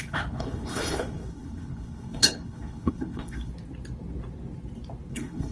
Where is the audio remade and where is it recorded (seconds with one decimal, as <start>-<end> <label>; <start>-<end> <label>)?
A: 0.0-3.5 remade; 3.5-5.1 recorded; 5.1-5.5 remade